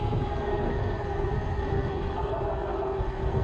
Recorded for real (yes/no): no